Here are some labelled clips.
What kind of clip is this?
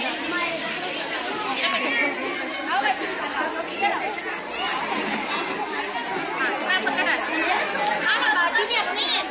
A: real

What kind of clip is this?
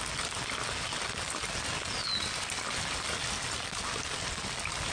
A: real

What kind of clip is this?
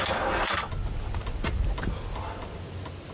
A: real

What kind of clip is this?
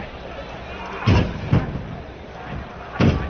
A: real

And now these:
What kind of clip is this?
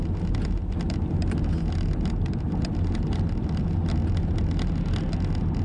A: real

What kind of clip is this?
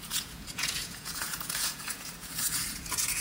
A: fake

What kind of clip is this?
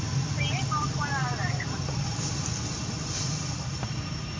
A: real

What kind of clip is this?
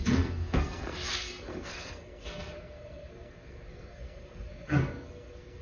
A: fake